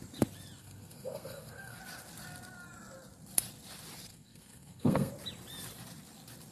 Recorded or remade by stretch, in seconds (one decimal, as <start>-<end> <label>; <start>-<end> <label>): 0.0-0.6 recorded; 0.6-1.8 remade; 1.8-4.1 recorded; 4.1-5.1 remade; 5.1-6.5 recorded

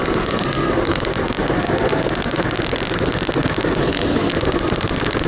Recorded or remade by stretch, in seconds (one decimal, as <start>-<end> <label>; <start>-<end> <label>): 0.0-1.1 remade; 1.1-3.8 recorded; 3.8-4.3 remade; 4.3-5.3 recorded

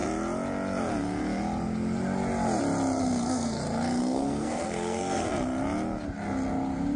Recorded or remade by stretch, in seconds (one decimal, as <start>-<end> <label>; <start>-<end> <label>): 0.0-3.0 recorded; 3.0-3.6 remade; 3.6-4.0 recorded; 4.0-5.3 remade; 5.3-7.0 recorded